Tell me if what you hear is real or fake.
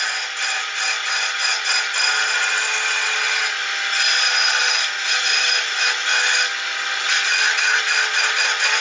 real